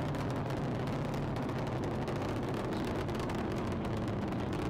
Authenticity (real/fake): real